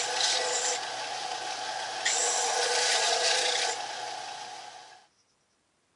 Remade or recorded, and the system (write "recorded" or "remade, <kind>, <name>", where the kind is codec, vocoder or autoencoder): recorded